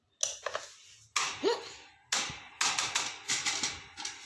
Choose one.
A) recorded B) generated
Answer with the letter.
A